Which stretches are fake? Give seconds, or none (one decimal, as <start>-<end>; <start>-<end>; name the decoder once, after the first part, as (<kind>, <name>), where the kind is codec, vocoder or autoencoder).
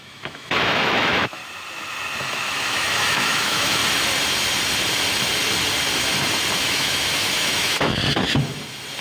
0.0-1.4 (autoencoder, DAC-VAE); 2.2-3.8; 6.6-8.0